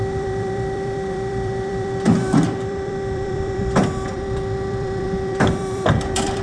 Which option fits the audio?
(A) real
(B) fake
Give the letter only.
B